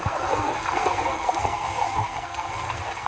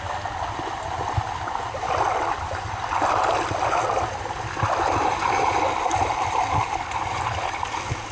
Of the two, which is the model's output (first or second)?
first